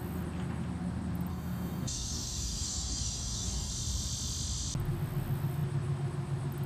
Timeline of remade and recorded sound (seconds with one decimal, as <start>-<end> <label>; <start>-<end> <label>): 0.0-1.3 recorded; 1.3-3.7 remade; 3.7-6.7 recorded